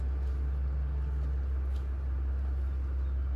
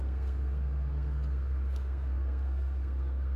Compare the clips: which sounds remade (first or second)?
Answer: second